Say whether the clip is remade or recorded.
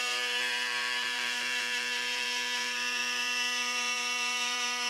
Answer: remade